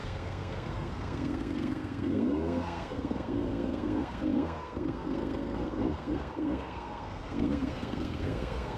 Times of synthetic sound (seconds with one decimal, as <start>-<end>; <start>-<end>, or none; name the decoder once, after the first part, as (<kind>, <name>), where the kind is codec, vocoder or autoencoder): 0.0-8.8 (codec, SNAC)